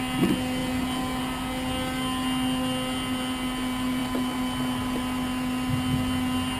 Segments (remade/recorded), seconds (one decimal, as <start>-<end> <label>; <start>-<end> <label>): 0.0-6.6 recorded